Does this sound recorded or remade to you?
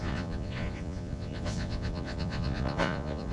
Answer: remade